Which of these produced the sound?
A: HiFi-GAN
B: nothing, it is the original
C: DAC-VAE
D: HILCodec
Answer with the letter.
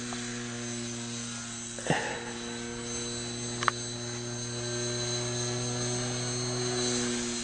B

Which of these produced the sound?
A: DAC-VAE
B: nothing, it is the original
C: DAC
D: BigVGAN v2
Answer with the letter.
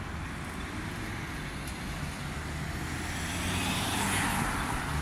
B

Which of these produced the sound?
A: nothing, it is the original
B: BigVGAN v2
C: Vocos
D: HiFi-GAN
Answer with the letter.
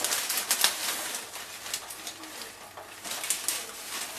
A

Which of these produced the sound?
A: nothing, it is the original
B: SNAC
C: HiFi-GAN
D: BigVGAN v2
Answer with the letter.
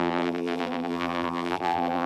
D